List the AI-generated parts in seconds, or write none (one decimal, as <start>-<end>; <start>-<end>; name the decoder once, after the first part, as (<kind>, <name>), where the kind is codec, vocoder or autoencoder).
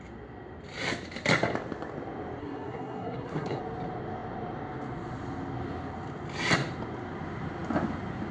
2.4-3.6 (codec, SNAC)